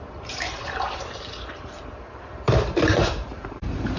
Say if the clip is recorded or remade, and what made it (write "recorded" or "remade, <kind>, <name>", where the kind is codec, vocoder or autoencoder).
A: remade, vocoder, BigVGAN v2